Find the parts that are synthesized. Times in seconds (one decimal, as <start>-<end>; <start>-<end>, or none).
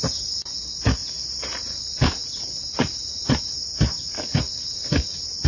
none